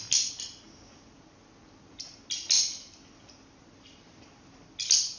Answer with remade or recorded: recorded